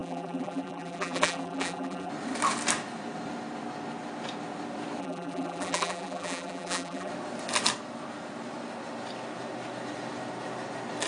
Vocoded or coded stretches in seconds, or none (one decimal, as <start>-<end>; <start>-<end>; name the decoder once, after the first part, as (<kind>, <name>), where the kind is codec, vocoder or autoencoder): 0.0-2.1 (vocoder, BigVGAN v2); 5.0-7.1